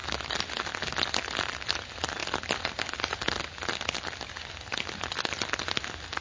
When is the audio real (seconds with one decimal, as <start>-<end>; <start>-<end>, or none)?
0.0-6.2